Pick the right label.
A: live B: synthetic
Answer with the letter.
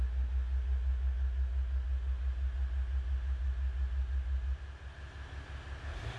A